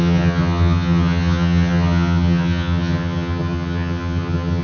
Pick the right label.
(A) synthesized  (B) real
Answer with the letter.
A